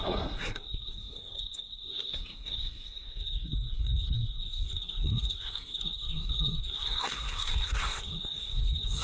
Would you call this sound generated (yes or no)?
yes